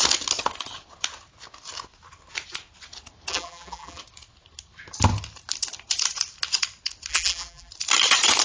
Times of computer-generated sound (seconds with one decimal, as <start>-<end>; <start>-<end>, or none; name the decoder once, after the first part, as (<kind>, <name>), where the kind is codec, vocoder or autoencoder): 3.3-4.0 (vocoder, BigVGAN v2); 7.1-7.7